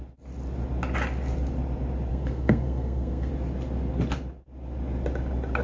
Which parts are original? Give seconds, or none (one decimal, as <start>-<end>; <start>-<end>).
0.0-2.1; 3.3-5.6